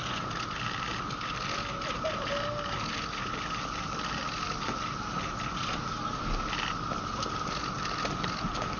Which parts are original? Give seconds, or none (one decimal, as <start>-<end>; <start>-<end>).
0.0-8.8